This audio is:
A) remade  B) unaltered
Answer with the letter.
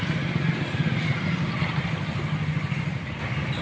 B